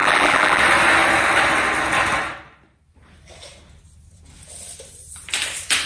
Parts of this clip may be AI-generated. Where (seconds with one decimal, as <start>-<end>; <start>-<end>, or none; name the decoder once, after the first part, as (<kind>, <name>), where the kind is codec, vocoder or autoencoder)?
0.0-0.6 (vocoder, BigVGAN v2)